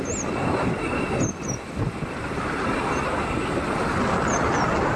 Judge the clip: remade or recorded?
recorded